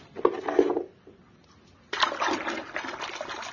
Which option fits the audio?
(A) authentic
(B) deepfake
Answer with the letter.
A